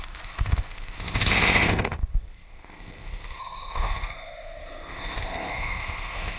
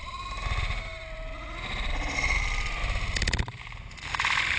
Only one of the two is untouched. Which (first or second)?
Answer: second